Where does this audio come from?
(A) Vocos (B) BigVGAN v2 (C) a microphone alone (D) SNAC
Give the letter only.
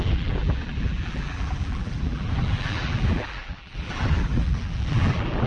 B